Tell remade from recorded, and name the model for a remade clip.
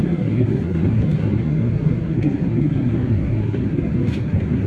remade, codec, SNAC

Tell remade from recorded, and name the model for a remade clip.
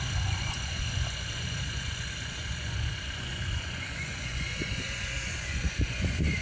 remade, vocoder, Vocos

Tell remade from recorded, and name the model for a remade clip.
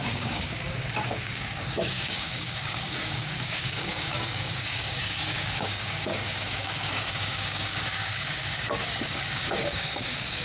remade, codec, DAC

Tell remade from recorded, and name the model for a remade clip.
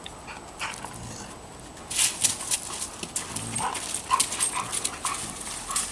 recorded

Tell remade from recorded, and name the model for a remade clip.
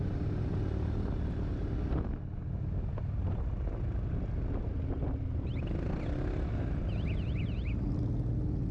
recorded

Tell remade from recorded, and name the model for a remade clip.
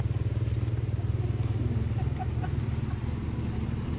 recorded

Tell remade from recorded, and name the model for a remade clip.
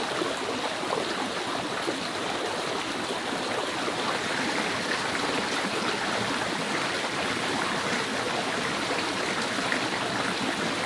recorded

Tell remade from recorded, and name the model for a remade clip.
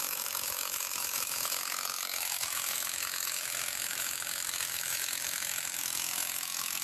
remade, autoencoder, DAC-VAE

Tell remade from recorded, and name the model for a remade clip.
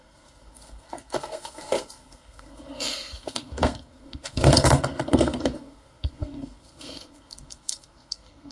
remade, codec, SNAC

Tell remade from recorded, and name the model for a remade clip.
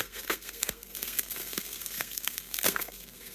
remade, codec, SNAC